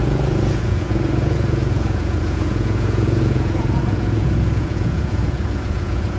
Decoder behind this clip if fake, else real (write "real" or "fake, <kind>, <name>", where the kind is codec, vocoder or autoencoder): fake, vocoder, Vocos